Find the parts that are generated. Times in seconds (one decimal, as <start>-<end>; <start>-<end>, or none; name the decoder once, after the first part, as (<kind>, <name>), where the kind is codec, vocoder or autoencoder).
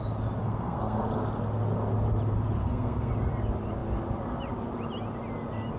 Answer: 0.4-1.0 (codec, SNAC); 2.6-3.1